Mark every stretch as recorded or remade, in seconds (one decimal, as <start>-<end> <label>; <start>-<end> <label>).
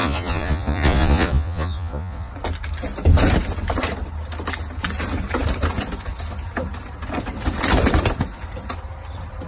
0.0-2.3 remade; 2.3-9.5 recorded